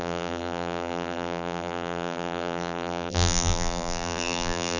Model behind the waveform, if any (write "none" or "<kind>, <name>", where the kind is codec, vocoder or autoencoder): vocoder, BigVGAN v2